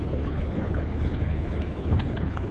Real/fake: fake